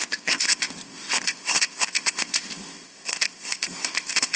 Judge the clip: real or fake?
fake